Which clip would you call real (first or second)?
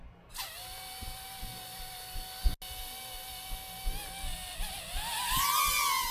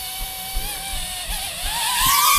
first